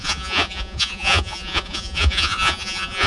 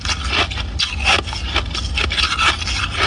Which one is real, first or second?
second